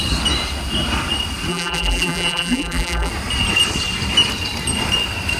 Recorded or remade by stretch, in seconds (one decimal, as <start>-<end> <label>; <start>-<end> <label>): 0.0-1.5 recorded; 1.5-3.1 remade; 3.1-5.4 recorded